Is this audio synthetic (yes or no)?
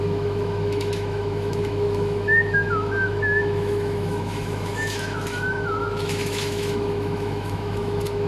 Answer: yes